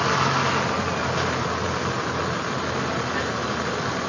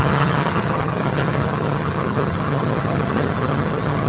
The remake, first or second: second